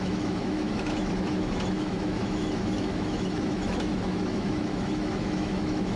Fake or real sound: fake